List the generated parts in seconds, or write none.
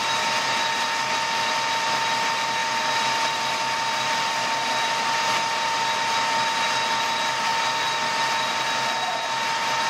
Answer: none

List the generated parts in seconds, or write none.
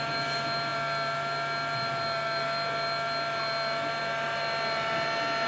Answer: none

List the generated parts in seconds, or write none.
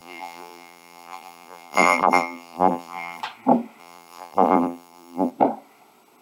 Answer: 0.0-3.2; 3.8-5.3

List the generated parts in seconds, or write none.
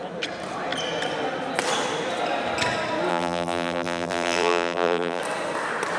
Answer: 3.1-5.2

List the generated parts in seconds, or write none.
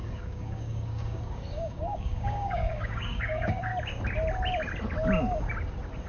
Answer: 0.0-3.7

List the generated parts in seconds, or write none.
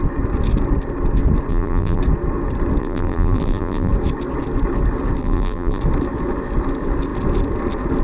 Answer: 1.5-2.0; 2.8-3.9; 5.2-5.8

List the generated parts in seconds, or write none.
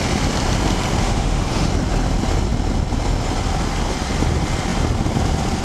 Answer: 1.0-1.7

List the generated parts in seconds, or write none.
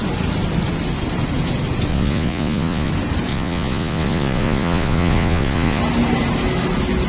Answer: 1.9-2.9; 3.3-5.8